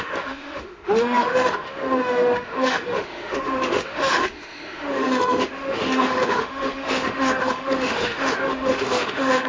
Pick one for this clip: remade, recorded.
remade